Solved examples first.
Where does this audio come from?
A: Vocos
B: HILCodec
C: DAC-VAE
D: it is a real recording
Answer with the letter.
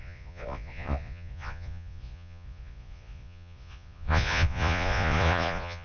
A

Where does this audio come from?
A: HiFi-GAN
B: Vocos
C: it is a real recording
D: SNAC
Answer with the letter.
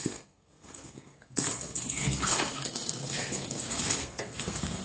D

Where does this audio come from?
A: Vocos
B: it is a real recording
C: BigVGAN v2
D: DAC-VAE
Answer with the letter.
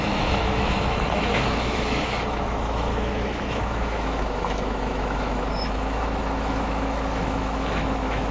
D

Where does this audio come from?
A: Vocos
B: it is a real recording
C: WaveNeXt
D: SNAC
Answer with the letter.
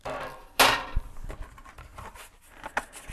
B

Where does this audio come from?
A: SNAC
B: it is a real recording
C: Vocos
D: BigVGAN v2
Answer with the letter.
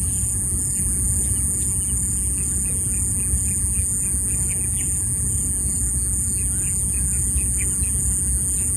B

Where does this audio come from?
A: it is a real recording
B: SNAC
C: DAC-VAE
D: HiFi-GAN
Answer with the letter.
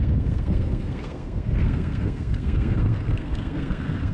B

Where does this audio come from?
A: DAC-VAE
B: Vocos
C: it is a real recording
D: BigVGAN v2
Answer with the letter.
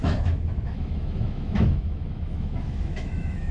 A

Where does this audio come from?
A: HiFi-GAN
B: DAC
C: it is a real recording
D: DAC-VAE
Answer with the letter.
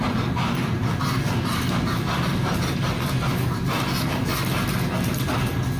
C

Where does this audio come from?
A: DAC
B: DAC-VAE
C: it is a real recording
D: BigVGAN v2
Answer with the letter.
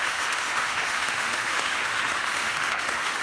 B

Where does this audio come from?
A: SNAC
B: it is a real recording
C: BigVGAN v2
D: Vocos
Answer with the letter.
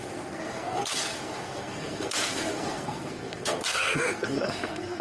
A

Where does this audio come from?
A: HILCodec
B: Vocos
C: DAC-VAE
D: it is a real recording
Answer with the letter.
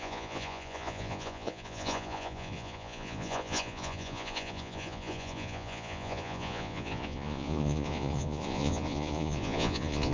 B